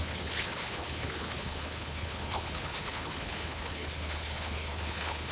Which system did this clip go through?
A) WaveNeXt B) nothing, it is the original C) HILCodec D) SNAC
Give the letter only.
C